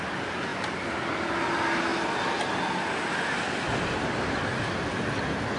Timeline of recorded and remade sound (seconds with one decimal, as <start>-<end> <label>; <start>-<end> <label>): 0.0-5.6 recorded